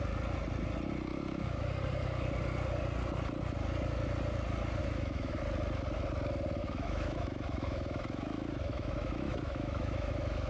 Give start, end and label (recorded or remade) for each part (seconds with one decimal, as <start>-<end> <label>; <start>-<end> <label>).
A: 0.0-1.1 recorded; 1.1-1.7 remade; 1.7-4.8 recorded; 4.8-5.4 remade; 5.4-6.6 recorded; 6.6-10.5 remade